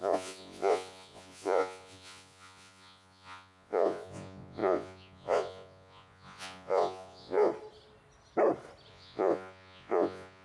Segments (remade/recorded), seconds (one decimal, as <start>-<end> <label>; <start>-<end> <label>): 0.0-7.5 remade; 7.5-8.9 recorded; 8.9-10.4 remade